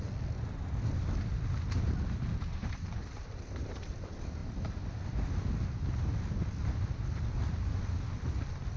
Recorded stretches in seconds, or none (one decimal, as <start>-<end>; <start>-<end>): 0.0-2.6; 3.9-8.8